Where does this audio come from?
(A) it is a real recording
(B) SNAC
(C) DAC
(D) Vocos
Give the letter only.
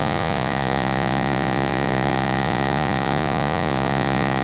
D